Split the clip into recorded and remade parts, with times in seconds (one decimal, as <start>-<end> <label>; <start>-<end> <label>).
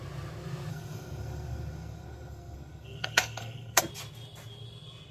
0.0-0.7 recorded; 0.7-3.8 remade; 3.8-5.1 recorded